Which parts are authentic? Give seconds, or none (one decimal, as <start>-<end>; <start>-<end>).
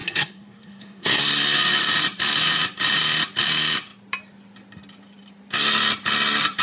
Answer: 1.2-6.6